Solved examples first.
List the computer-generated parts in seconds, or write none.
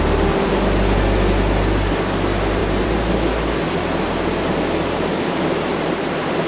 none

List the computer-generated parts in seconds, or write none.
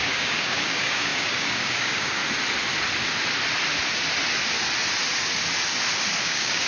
0.0-2.2 (codec, DAC); 6.2-6.7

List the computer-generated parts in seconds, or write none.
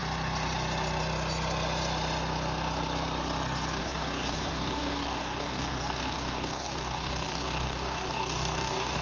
3.8-9.0 (codec, DAC)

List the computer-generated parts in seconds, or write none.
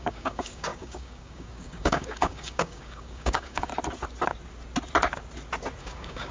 0.0-3.7 (codec, DAC); 5.8-6.3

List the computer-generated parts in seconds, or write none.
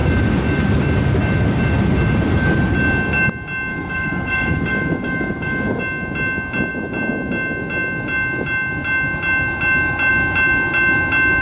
3.7-5.8 (codec, DAC)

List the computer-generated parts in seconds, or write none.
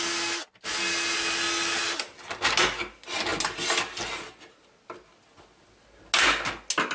none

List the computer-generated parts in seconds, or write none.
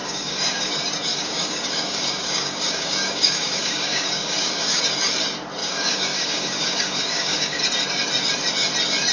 0.0-0.7 (codec, DAC); 1.1-4.8; 5.6-7.6